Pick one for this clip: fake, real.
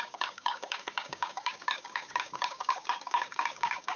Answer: fake